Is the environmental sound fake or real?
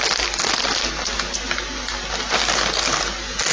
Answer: real